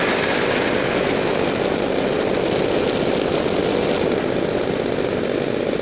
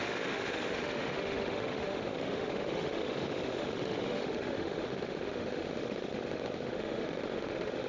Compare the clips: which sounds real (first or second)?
first